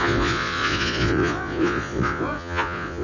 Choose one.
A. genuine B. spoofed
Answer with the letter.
B